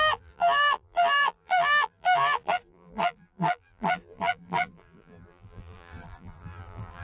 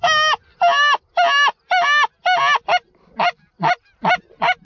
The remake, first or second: first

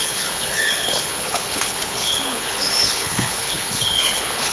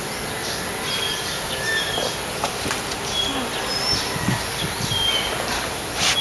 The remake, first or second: first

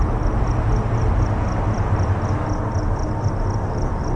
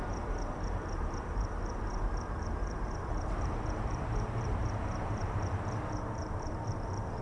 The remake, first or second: second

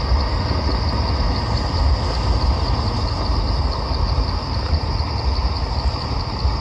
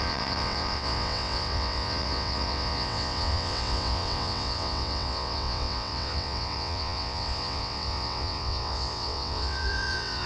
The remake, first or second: second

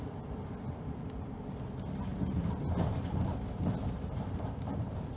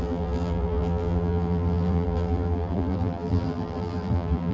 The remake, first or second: second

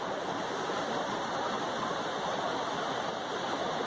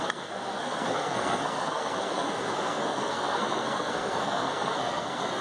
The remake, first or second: second